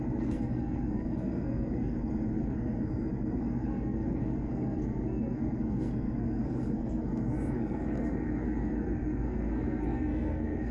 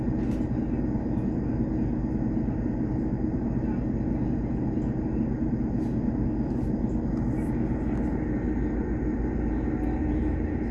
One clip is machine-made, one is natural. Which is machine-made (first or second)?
first